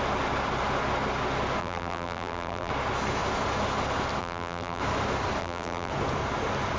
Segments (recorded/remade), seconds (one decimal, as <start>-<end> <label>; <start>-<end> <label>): 0.0-1.6 recorded; 1.6-2.7 remade; 2.7-4.2 recorded; 4.2-4.8 remade; 4.8-5.4 recorded; 5.4-5.9 remade; 5.9-6.8 recorded